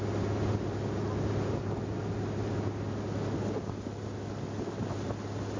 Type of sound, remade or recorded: recorded